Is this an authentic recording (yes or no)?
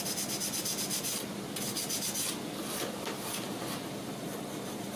yes